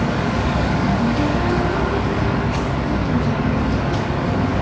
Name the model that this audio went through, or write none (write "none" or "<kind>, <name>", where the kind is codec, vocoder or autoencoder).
codec, DAC